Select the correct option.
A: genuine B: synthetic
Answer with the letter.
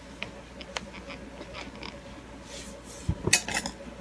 A